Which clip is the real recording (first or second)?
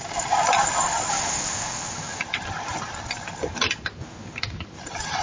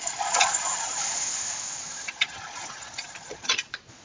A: first